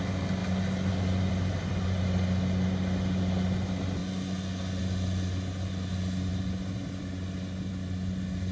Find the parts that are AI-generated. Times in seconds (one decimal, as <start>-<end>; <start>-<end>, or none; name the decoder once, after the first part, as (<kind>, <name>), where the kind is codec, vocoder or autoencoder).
none